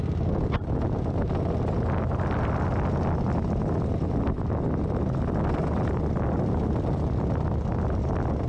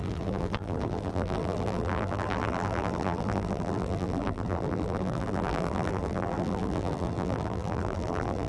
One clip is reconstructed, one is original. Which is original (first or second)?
first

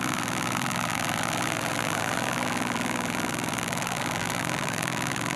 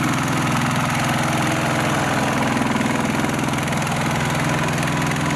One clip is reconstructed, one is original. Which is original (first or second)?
second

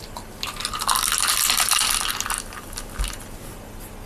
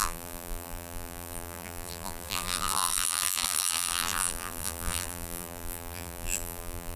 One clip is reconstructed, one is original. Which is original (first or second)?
first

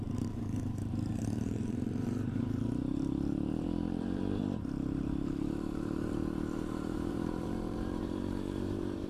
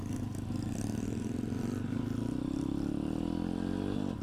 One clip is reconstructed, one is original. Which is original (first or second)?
second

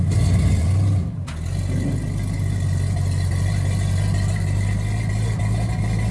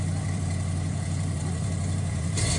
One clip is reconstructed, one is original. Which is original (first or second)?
first